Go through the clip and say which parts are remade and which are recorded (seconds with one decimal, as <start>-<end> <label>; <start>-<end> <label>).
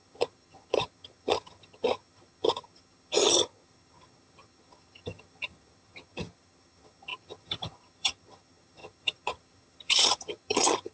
0.0-10.9 remade